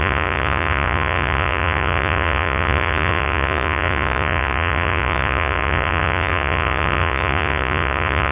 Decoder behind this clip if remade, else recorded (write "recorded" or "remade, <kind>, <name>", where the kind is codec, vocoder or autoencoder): remade, vocoder, Vocos